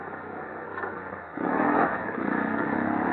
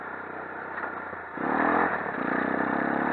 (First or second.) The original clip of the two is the second